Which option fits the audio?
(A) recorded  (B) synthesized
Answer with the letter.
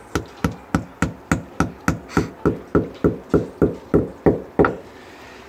A